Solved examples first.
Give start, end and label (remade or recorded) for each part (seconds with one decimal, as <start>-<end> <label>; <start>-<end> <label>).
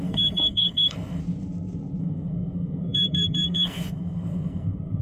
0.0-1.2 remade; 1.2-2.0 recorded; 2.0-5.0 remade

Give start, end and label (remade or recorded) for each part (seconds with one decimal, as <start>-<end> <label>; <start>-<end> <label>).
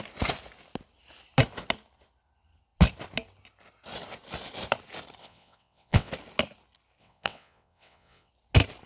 0.0-5.2 recorded; 5.2-6.1 remade; 6.1-7.0 recorded; 7.0-8.3 remade; 8.3-8.9 recorded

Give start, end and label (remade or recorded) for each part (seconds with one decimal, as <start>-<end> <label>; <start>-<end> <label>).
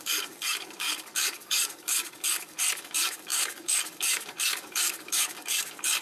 0.0-6.0 remade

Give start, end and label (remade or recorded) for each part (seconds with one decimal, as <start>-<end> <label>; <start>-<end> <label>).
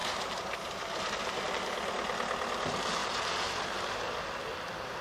0.0-1.5 remade; 1.5-3.0 recorded; 3.0-3.6 remade; 3.6-5.0 recorded